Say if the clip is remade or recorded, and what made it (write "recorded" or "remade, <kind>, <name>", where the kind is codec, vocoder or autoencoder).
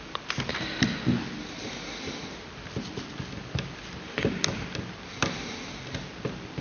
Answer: recorded